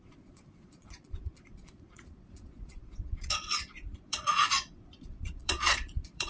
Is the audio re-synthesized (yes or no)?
yes